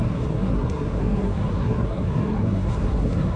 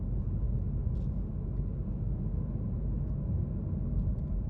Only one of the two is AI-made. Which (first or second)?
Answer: first